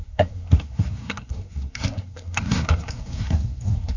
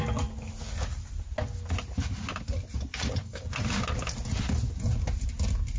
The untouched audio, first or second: second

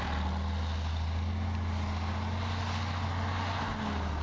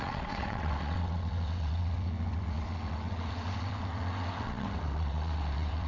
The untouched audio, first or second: first